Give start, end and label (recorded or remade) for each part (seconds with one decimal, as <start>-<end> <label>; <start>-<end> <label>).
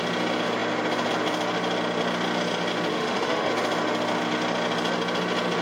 0.0-2.9 recorded; 2.9-3.5 remade; 3.5-5.6 recorded